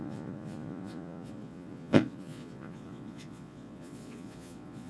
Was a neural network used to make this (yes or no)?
yes